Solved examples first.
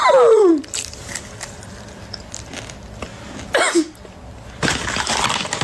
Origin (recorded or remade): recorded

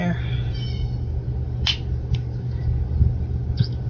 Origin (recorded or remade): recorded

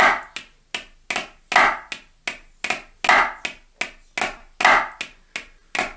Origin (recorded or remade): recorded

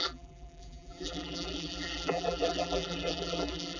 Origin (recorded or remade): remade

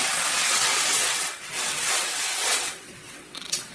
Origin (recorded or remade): remade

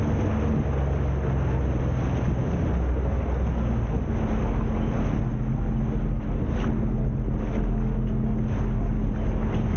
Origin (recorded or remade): recorded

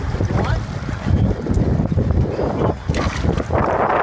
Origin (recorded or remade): recorded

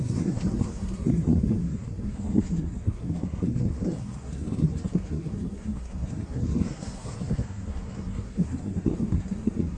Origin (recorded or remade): remade